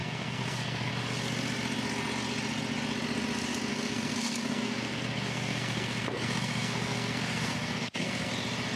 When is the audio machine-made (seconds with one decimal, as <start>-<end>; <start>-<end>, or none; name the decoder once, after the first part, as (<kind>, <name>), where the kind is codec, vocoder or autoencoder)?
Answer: 0.0-0.9 (codec, SNAC); 3.7-8.3